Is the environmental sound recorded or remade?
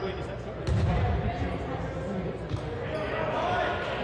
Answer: recorded